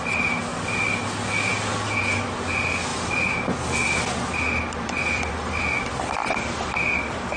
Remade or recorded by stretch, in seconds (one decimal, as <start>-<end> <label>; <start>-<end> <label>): 0.0-2.9 recorded; 2.9-5.6 remade; 5.6-7.4 recorded